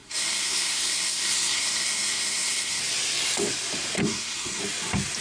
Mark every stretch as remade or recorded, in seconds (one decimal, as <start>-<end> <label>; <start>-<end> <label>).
0.0-2.8 remade; 2.8-4.0 recorded; 4.0-4.6 remade; 4.6-5.2 recorded

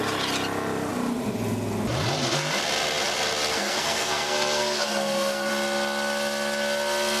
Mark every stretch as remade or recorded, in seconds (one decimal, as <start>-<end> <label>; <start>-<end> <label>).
0.0-3.5 recorded; 3.5-5.5 remade; 5.5-7.2 recorded

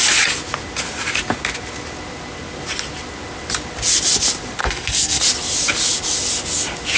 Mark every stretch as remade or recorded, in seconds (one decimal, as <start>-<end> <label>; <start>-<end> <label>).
0.0-4.6 recorded; 4.6-5.2 remade; 5.2-7.0 recorded

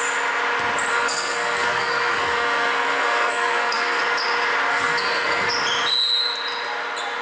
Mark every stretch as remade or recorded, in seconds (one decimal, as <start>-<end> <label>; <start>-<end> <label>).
0.0-0.9 recorded; 0.9-4.0 remade; 4.0-4.7 recorded; 4.7-5.5 remade; 5.5-7.2 recorded